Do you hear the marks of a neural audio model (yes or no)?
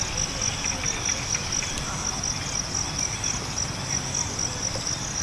no